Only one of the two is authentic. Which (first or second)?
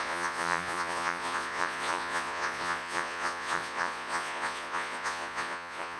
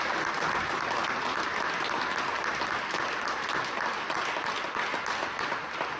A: second